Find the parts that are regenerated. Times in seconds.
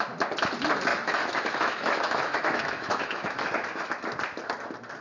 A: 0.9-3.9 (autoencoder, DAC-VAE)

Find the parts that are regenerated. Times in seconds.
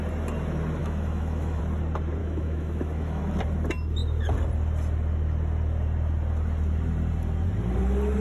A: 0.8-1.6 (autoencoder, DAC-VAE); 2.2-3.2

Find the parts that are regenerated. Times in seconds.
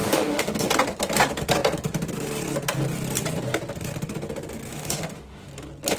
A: 0.0-0.6 (autoencoder, DAC-VAE); 4.7-5.5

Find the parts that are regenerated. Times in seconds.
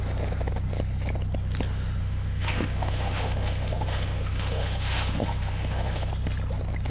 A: 2.0-6.1 (autoencoder, DAC-VAE)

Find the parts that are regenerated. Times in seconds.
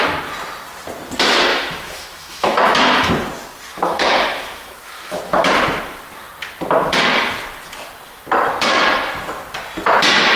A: 1.5-3.1 (autoencoder, DAC-VAE); 3.7-5.5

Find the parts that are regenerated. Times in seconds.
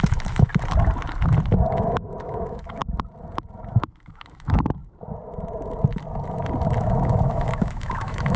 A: 0.0-0.5 (autoencoder, DAC-VAE); 2.2-2.8; 3.7-4.8; 6.8-8.4